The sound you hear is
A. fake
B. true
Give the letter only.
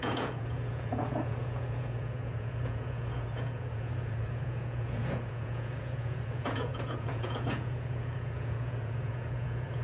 A